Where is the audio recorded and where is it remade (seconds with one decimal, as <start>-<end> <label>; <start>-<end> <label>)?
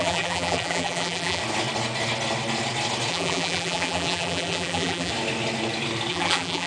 0.0-1.4 remade; 1.4-3.1 recorded; 3.1-5.1 remade; 5.1-6.1 recorded; 6.1-6.7 remade